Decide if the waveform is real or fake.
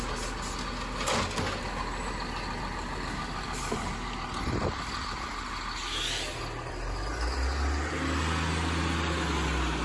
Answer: real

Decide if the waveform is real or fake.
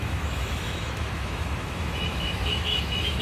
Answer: fake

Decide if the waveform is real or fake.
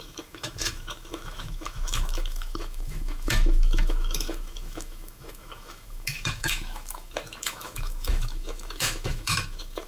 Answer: fake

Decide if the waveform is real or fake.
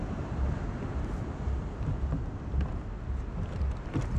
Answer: real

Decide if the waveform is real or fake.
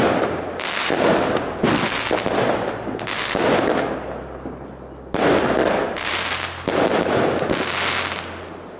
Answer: real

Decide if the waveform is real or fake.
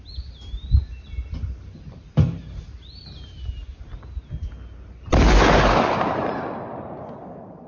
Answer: real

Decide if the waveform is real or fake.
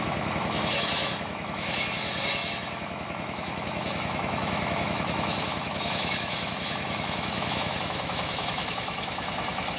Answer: fake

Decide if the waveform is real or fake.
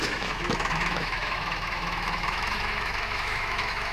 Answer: fake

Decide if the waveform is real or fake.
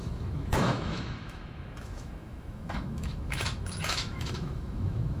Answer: fake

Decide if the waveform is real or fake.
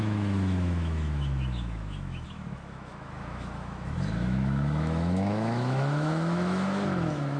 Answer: fake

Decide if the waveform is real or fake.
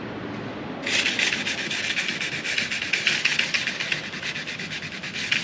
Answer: real